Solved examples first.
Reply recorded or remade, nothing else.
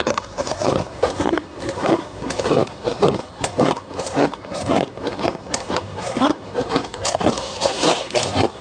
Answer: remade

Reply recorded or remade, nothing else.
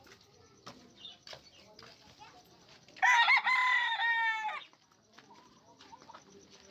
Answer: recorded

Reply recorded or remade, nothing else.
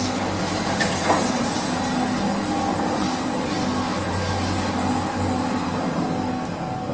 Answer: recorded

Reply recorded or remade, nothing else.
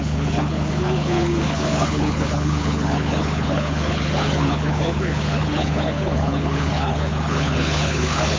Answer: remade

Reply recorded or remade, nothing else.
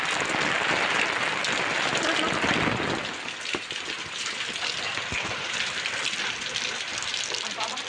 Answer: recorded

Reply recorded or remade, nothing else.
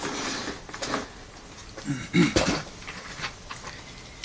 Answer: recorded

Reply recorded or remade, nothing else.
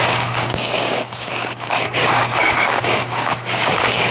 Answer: remade